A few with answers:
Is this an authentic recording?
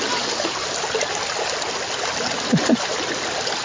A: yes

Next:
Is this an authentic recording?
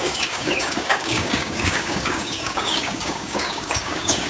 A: no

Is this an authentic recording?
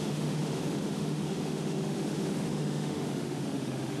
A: no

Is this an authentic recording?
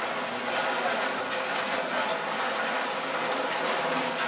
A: yes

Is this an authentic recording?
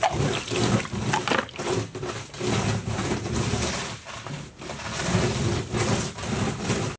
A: yes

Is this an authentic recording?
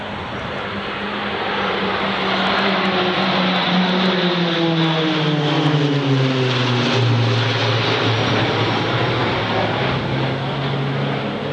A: yes